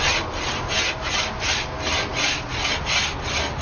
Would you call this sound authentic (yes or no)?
yes